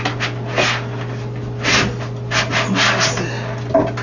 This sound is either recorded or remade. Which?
recorded